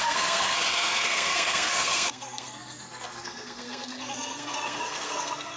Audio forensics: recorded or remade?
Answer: remade